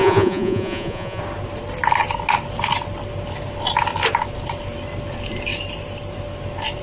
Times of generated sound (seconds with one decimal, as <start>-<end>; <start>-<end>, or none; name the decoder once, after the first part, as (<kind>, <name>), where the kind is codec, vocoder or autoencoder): 0.0-1.2 (vocoder, Vocos)

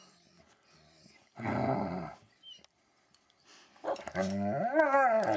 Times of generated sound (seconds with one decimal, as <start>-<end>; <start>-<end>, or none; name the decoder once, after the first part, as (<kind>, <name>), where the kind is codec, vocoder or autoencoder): none